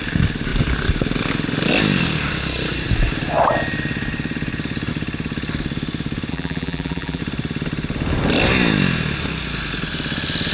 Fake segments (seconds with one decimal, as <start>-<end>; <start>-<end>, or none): 6.3-7.2

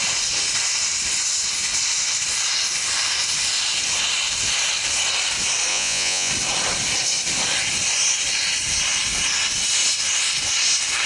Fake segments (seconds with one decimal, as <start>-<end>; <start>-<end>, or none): 5.7-6.3

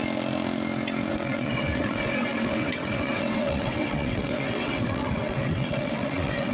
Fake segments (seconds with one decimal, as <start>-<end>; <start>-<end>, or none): 1.1-6.5

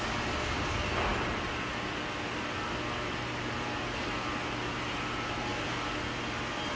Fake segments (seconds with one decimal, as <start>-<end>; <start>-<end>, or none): none

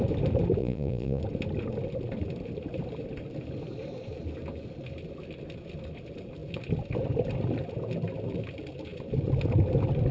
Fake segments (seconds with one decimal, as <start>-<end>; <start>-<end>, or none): 0.6-1.2

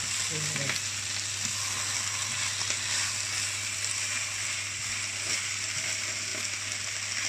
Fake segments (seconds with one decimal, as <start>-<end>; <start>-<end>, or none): none